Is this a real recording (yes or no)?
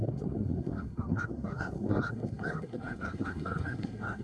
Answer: no